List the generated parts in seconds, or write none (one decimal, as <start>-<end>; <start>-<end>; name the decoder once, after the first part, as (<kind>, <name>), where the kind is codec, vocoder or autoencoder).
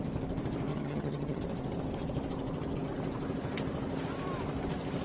0.7-1.4 (vocoder, HiFi-GAN)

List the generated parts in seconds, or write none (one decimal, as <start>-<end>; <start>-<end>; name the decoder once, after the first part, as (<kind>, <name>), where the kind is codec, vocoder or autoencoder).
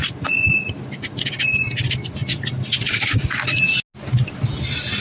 none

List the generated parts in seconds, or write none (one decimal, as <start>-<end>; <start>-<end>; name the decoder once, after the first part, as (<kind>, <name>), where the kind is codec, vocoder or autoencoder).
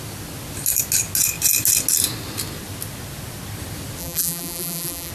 4.0-5.1 (vocoder, BigVGAN v2)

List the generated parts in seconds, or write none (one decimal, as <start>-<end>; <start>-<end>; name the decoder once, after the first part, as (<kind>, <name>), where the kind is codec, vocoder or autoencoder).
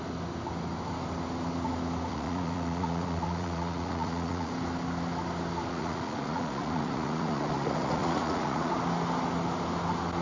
2.1-4.5 (vocoder, Vocos); 5.7-8.7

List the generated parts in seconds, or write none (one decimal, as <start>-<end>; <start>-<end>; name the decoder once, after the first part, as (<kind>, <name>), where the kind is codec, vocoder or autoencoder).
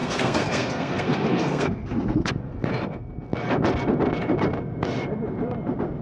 0.0-2.3 (codec, SNAC)